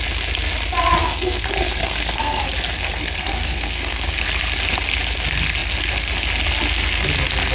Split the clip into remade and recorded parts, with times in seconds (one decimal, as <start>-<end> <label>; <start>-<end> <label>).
0.0-1.0 recorded; 1.0-2.4 remade; 2.4-2.8 recorded; 2.8-4.2 remade; 4.2-7.5 recorded